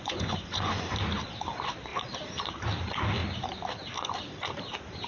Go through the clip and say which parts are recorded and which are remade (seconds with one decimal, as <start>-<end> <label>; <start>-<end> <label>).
0.0-0.8 remade; 0.8-5.1 recorded